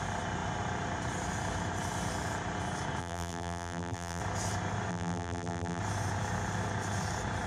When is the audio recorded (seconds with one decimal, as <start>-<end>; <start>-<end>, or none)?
0.0-3.0; 4.2-4.9; 5.8-7.5